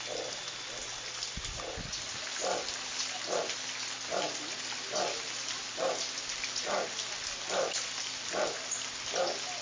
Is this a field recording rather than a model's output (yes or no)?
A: yes